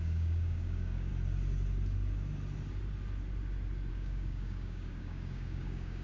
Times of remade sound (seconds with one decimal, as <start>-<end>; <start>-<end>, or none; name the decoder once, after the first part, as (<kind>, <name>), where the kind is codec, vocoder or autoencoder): 0.0-1.1 (codec, DAC); 3.9-6.0